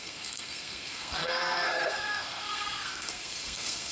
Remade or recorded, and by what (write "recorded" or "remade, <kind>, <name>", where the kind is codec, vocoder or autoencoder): remade, codec, SNAC